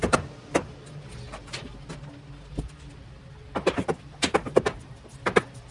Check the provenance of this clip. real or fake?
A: real